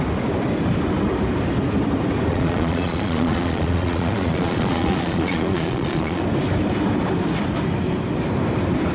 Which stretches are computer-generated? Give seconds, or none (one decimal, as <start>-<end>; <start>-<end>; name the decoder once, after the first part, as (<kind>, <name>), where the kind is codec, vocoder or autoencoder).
2.3-6.2 (vocoder, Vocos)